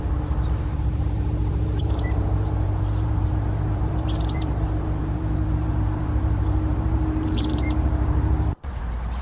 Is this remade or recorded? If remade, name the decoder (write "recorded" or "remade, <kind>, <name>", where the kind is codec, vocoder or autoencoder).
remade, vocoder, BigVGAN v2